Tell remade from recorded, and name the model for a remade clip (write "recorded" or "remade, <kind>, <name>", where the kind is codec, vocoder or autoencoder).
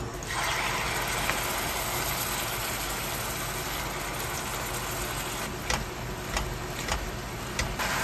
recorded